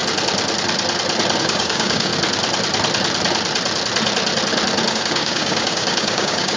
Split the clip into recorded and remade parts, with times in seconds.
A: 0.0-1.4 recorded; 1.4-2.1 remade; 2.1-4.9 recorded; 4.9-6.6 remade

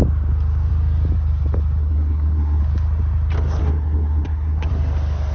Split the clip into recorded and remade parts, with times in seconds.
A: 0.0-1.8 recorded; 1.8-2.6 remade; 2.6-3.6 recorded; 3.6-4.7 remade; 4.7-5.3 recorded

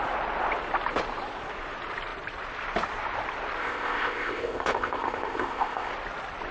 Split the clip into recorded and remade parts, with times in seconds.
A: 0.0-3.6 recorded; 3.6-5.9 remade; 5.9-6.5 recorded